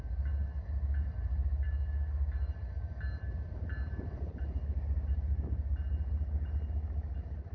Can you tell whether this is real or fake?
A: real